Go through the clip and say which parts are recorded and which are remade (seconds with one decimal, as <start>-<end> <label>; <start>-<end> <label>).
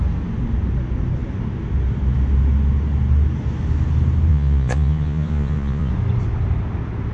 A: 0.0-4.3 recorded; 4.3-5.9 remade; 5.9-7.1 recorded